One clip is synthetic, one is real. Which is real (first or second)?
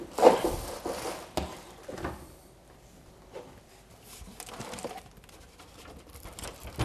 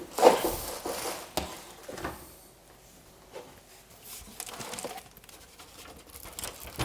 second